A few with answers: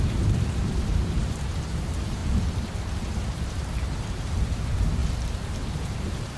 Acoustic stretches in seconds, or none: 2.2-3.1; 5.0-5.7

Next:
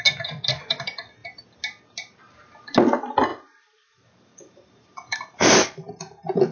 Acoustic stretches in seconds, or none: 0.0-3.3